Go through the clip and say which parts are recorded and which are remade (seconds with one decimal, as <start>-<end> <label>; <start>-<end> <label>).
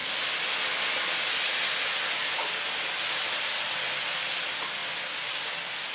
0.0-5.9 recorded